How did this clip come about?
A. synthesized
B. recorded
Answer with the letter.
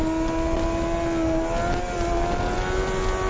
B